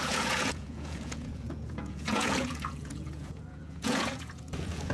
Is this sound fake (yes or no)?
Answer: yes